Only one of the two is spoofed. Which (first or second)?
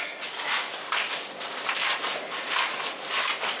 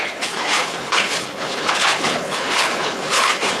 second